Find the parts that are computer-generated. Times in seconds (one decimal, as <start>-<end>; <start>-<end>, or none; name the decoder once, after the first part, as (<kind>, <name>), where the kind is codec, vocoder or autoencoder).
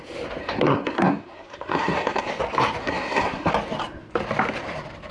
0.4-2.3 (codec, SNAC); 2.8-3.5